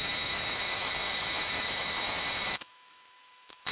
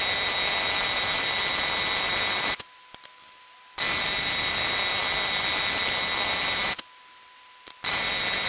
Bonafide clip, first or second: second